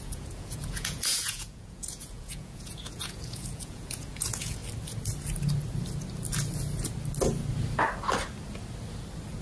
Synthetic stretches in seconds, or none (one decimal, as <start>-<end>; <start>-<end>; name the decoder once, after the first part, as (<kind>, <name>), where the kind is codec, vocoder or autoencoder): 0.0-4.6 (vocoder, Vocos)